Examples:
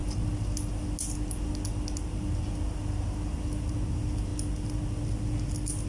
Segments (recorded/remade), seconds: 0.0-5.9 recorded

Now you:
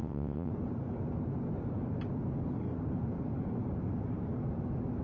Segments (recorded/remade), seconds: 0.0-0.5 remade; 0.5-5.0 recorded

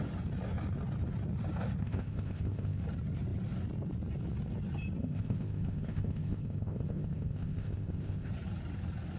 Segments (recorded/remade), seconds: 0.0-1.8 recorded; 1.8-2.8 remade; 2.8-5.0 recorded; 5.0-8.3 remade; 8.3-9.2 recorded

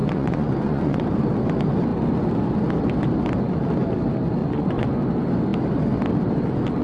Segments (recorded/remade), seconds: 0.0-1.0 remade; 1.0-4.4 recorded; 4.4-4.9 remade; 4.9-6.8 recorded

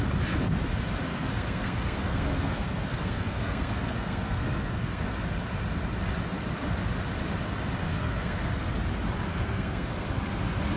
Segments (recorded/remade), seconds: 0.0-1.1 recorded; 1.1-5.0 remade; 5.0-7.9 recorded; 7.9-8.7 remade; 8.7-9.3 recorded; 9.3-10.1 remade; 10.1-10.8 recorded